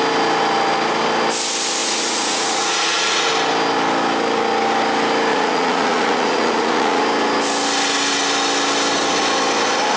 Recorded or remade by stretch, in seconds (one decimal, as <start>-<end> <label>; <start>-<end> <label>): 0.0-1.8 recorded; 1.8-3.3 remade; 3.3-5.3 recorded; 5.3-7.0 remade; 7.0-10.0 recorded